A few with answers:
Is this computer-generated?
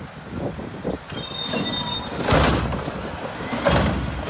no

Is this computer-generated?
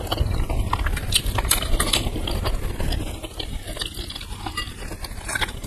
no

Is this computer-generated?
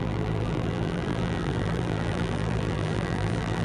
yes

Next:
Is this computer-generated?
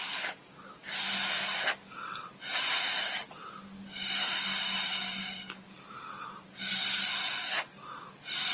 no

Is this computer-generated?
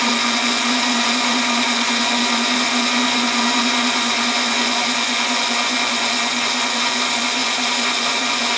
yes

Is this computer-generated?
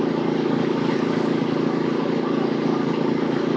yes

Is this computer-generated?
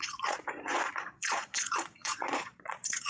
yes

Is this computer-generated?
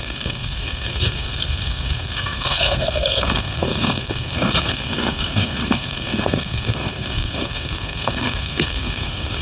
yes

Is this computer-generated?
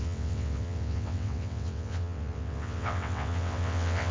yes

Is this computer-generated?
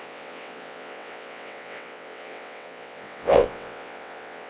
yes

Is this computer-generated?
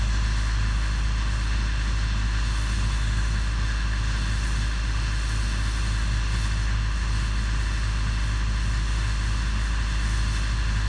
yes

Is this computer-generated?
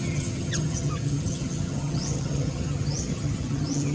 yes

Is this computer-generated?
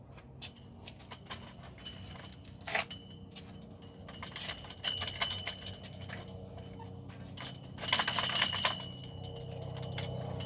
no